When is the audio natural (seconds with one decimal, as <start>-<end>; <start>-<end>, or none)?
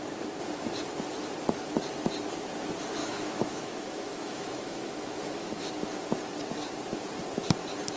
0.0-3.0; 5.7-8.0